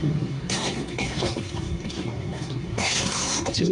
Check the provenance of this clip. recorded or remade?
remade